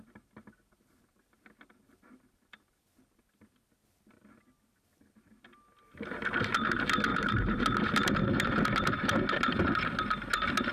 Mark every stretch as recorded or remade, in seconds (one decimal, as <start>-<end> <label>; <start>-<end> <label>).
0.0-7.1 recorded; 7.1-7.6 remade; 7.6-10.7 recorded